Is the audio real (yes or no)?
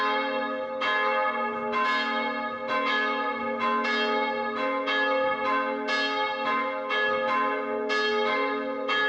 yes